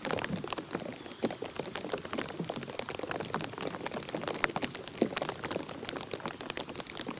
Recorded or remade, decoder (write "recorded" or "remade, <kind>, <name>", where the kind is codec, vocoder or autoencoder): recorded